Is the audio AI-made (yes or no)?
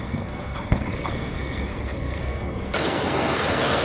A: yes